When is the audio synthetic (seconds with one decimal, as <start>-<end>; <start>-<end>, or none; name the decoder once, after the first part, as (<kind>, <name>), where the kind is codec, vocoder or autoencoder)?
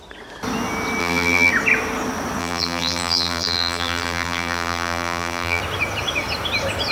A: 1.0-1.5 (vocoder, BigVGAN v2); 2.4-5.6